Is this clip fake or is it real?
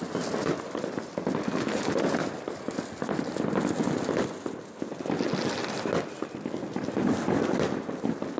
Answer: real